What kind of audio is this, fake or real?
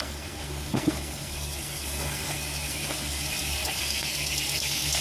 fake